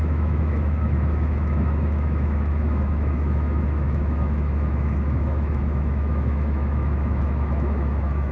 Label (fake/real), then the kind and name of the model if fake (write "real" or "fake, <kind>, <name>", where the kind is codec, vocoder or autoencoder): fake, autoencoder, DAC-VAE